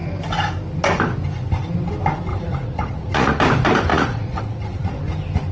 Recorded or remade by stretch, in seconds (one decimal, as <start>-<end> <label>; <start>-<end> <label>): 0.0-2.3 recorded; 2.3-3.4 remade; 3.4-3.9 recorded; 3.9-5.0 remade; 5.0-5.5 recorded